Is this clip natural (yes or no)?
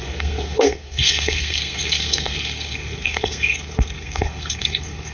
no